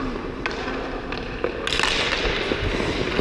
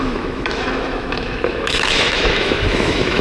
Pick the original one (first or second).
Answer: first